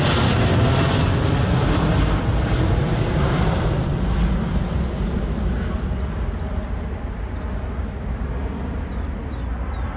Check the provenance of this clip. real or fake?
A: real